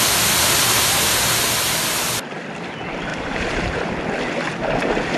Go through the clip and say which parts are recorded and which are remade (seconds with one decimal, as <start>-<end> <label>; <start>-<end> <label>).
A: 0.0-3.1 recorded; 3.1-3.9 remade; 3.9-5.2 recorded